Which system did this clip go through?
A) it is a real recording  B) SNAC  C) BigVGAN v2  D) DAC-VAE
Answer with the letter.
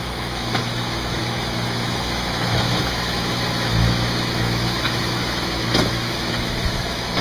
D